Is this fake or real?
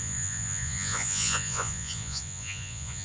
fake